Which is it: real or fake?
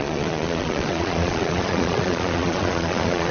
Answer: fake